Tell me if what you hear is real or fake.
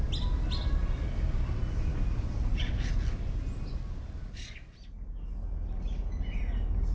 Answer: real